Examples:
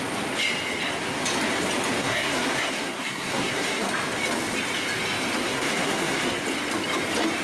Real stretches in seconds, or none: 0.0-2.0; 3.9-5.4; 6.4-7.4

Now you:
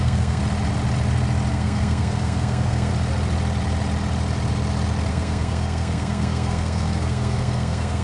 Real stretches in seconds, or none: 0.4-1.5; 2.9-5.1

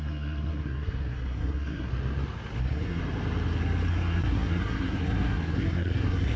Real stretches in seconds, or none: 1.9-2.6; 3.0-3.9

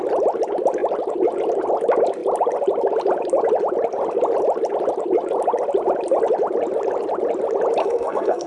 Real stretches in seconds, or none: 0.0-7.8

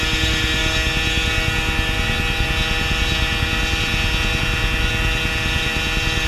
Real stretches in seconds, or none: 0.0-6.3

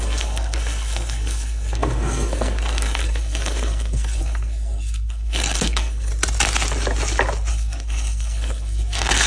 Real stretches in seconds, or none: 6.1-7.5